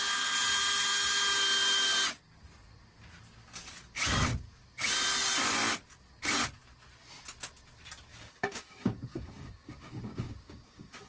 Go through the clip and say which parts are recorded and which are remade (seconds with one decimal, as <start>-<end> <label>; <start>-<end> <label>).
0.0-8.1 recorded; 8.1-11.1 remade